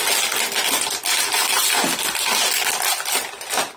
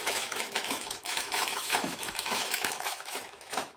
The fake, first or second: second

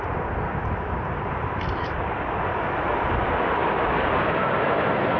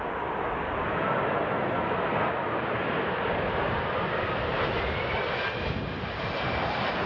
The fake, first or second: first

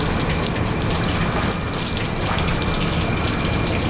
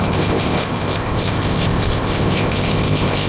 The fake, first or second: second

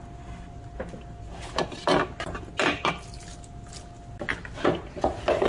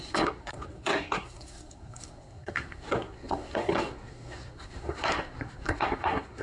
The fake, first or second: second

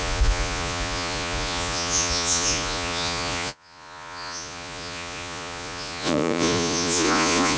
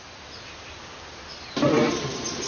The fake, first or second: first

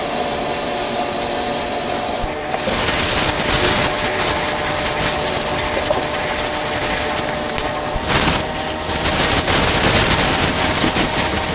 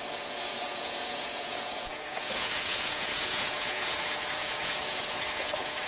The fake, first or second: second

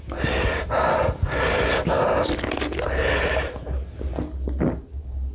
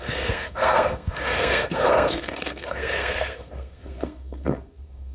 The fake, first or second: second